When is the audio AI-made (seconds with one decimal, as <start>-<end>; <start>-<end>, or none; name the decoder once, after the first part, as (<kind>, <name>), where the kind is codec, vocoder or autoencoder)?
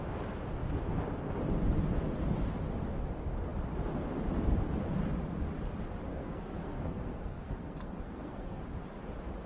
6.1-8.6 (codec, SNAC)